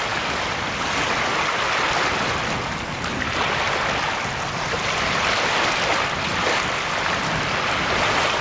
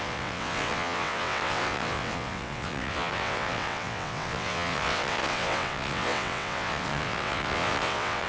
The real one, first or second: first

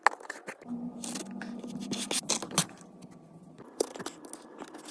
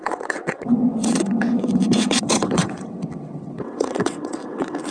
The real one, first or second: first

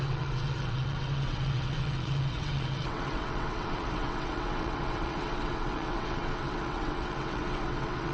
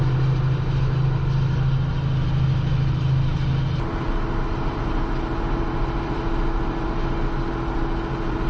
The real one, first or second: second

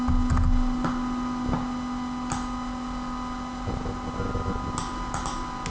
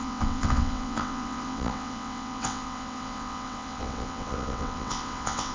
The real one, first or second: first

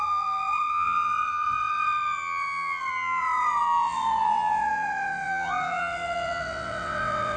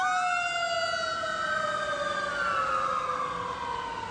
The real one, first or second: second